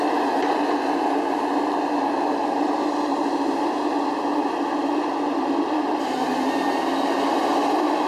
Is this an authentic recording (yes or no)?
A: yes